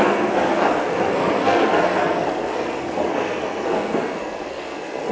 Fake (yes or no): yes